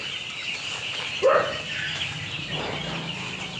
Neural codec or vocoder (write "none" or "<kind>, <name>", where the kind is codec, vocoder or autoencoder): none